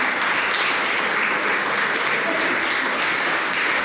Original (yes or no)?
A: yes